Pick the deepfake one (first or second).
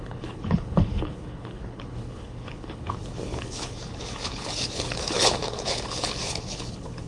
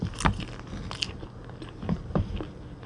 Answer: first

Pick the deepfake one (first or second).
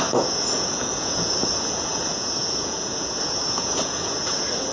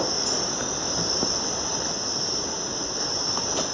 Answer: first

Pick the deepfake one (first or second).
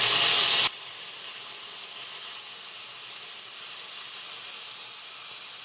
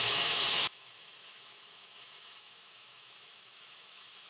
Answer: second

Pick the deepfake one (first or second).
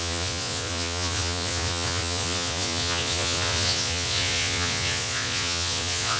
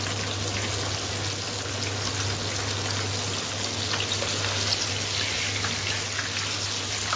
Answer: first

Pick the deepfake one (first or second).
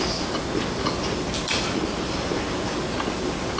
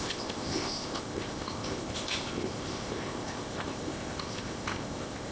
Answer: second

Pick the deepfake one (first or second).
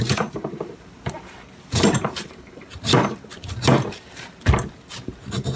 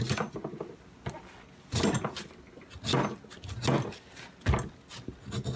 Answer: first